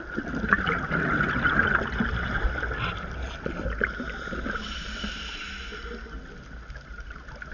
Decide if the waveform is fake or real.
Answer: real